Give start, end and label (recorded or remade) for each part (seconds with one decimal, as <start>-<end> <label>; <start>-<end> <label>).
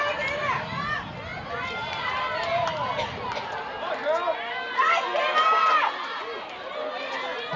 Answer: 0.0-7.6 recorded